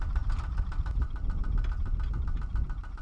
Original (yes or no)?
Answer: yes